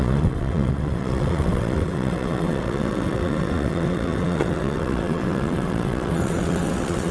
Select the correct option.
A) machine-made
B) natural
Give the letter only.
A